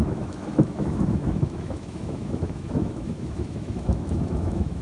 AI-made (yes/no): yes